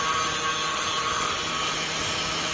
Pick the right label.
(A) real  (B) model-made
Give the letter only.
A